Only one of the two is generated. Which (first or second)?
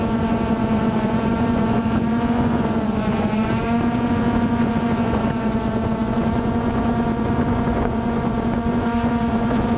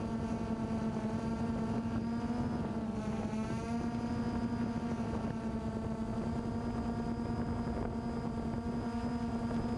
first